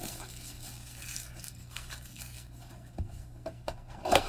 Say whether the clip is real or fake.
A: fake